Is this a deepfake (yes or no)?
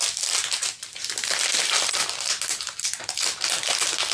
no